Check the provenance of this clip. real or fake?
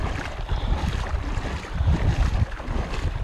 fake